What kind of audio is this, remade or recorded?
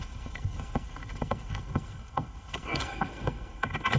remade